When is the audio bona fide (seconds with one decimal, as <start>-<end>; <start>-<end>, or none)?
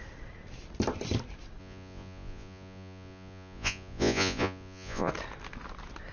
0.0-1.6; 5.1-6.1